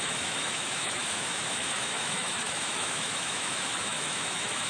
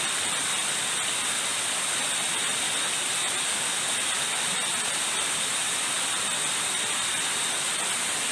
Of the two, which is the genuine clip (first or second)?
second